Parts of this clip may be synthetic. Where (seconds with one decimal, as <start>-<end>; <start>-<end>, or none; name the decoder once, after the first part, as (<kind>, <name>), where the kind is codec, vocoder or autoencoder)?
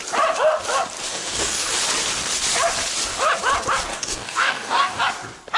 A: 1.1-1.8 (codec, DAC); 3.9-5.0